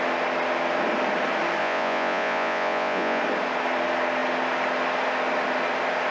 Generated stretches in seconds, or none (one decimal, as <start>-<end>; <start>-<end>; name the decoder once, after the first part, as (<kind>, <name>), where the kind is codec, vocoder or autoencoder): 1.6-3.2 (vocoder, Vocos)